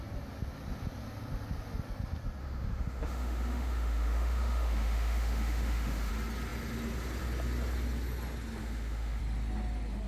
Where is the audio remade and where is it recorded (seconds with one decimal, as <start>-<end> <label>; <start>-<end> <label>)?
0.0-2.4 recorded; 2.4-6.1 remade; 6.1-8.6 recorded; 8.6-9.2 remade; 9.2-10.1 recorded